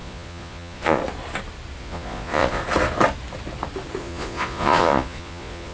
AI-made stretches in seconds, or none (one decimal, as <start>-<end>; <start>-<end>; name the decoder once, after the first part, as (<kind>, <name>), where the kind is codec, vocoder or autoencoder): 0.0-1.0 (vocoder, Vocos); 1.8-2.6; 4.0-5.7